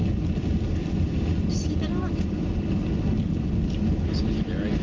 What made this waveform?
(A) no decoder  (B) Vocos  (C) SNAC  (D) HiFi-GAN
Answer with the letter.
A